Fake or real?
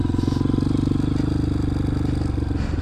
real